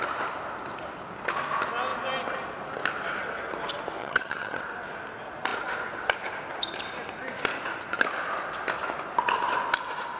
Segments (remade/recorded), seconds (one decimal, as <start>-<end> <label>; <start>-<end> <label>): 0.0-4.0 recorded; 4.0-4.6 remade; 4.6-10.2 recorded

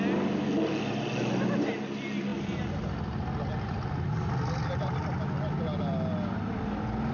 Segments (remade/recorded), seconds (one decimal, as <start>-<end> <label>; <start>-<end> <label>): 0.0-7.1 recorded

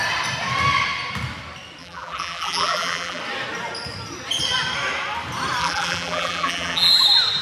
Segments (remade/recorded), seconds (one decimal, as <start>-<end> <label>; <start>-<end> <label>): 0.0-1.8 recorded; 1.8-3.2 remade; 3.2-5.6 recorded; 5.6-6.9 remade; 6.9-7.4 recorded

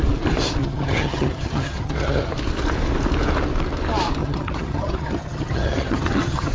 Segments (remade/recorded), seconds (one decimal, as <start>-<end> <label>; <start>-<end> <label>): 0.0-0.6 recorded; 0.6-2.3 remade; 2.3-4.2 recorded; 4.2-6.5 remade

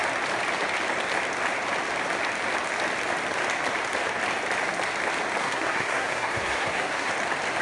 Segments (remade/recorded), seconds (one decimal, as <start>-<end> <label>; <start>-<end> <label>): 0.0-5.4 recorded; 5.4-7.1 remade; 7.1-7.6 recorded